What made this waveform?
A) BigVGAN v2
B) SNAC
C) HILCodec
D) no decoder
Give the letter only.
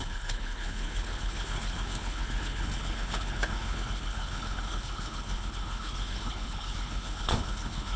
C